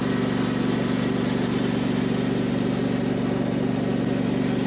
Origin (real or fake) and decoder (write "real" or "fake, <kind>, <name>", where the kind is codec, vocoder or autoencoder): real